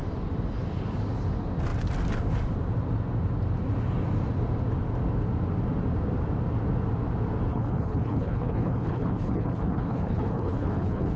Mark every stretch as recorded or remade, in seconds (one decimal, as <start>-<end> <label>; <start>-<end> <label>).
0.0-7.5 recorded; 7.5-11.2 remade